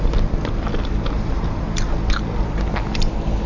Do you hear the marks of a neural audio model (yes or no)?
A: no